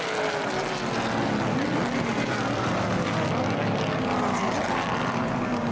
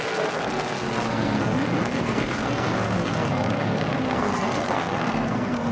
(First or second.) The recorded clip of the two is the first